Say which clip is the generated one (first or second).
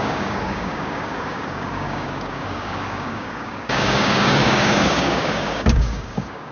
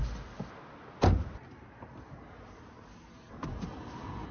first